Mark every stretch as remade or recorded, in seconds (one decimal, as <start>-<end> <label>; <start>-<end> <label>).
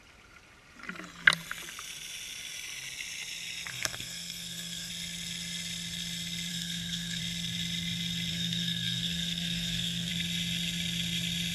0.0-3.7 recorded; 3.7-4.9 remade; 4.9-6.5 recorded; 6.5-7.2 remade; 7.2-8.3 recorded; 8.3-10.1 remade; 10.1-11.5 recorded